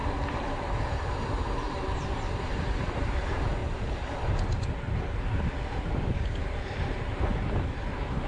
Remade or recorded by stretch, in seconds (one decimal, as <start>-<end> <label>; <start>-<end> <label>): 0.0-3.6 remade; 3.6-5.1 recorded; 5.1-8.3 remade